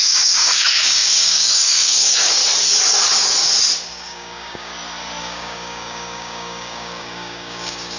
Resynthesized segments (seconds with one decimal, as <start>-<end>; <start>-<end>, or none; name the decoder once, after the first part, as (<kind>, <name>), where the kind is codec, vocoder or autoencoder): 0.0-2.4 (codec, DAC); 3.9-4.7; 5.2-8.0